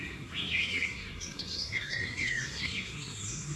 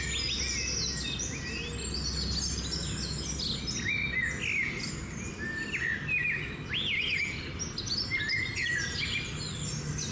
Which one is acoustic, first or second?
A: second